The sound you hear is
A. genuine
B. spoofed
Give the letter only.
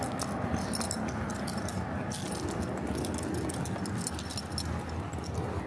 A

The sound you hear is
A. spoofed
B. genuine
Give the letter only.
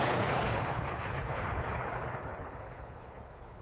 A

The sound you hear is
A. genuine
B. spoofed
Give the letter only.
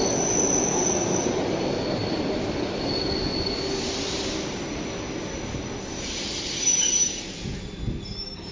A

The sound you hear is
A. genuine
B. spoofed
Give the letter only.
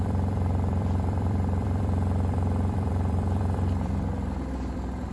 B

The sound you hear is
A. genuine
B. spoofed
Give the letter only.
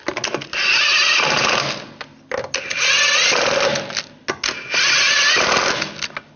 A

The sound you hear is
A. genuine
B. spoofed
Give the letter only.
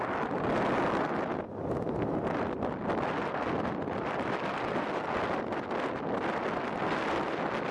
A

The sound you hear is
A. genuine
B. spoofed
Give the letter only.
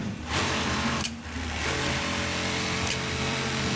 B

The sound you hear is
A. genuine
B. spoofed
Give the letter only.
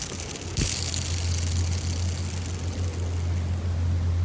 A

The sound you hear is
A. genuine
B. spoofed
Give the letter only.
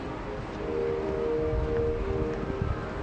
A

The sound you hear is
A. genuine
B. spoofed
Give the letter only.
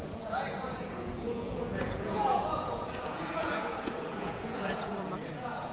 B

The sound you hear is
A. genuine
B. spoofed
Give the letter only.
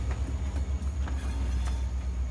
A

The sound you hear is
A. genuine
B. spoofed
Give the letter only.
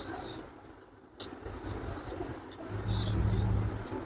A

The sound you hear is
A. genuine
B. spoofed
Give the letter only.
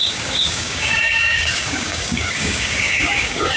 B